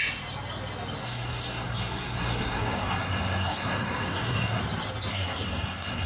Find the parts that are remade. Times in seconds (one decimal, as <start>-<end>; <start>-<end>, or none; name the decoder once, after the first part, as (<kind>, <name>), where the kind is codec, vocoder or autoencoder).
1.0-4.6 (codec, SNAC); 5.1-6.1